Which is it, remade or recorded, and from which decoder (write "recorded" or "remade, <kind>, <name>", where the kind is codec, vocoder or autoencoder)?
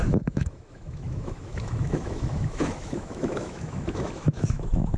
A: remade, autoencoder, DAC-VAE